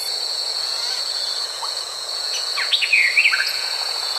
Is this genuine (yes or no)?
no